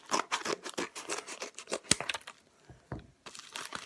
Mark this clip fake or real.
real